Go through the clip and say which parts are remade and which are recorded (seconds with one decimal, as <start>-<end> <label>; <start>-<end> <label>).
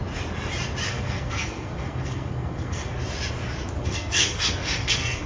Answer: 0.0-0.9 recorded; 0.9-2.9 remade; 2.9-3.8 recorded; 3.8-5.3 remade